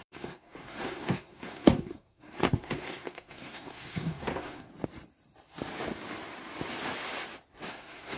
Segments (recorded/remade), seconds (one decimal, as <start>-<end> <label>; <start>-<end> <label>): 0.0-4.7 remade; 4.7-7.7 recorded; 7.7-8.2 remade